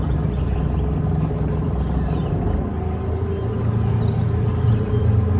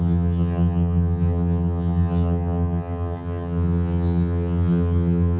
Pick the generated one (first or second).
second